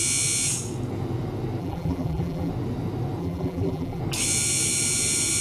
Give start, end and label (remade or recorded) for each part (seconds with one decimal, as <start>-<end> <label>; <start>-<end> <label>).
0.0-1.6 recorded; 1.6-2.5 remade; 2.5-3.2 recorded; 3.2-4.0 remade; 4.0-5.4 recorded